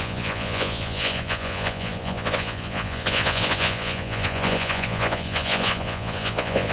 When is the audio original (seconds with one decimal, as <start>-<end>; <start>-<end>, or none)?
none